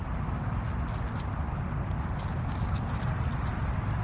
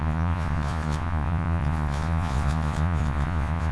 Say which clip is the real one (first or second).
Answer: first